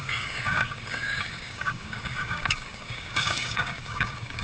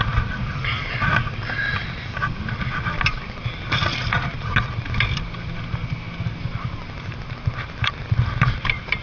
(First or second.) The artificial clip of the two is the first